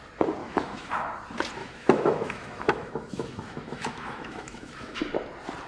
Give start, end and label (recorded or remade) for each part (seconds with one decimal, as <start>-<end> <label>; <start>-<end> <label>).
0.0-0.4 recorded; 0.4-0.9 remade; 0.9-1.6 recorded; 1.6-5.0 remade; 5.0-5.7 recorded